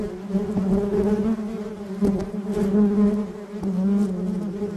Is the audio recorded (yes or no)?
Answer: yes